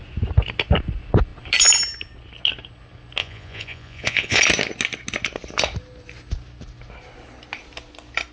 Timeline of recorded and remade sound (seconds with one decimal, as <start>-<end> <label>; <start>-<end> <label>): 0.0-3.2 recorded; 3.2-4.4 remade; 4.4-8.3 recorded